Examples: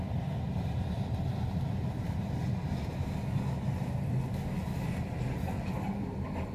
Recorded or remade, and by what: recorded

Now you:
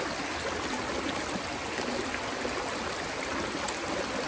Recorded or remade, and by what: recorded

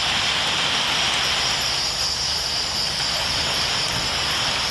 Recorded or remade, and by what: recorded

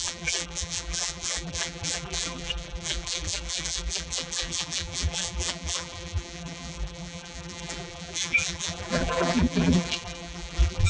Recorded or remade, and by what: remade, vocoder, BigVGAN v2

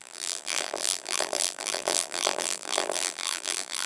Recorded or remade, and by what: remade, vocoder, BigVGAN v2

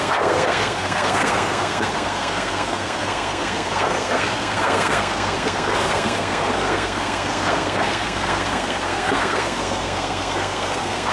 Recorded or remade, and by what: remade, codec, SNAC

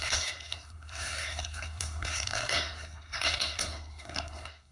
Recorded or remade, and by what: remade, codec, SNAC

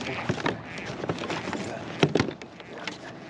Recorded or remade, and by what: recorded